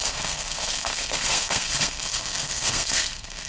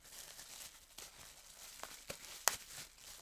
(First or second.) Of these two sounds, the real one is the second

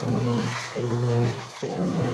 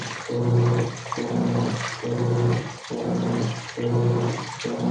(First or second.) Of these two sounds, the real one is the second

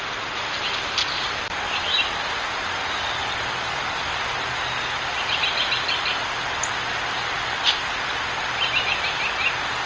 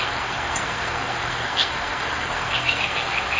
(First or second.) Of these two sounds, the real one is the first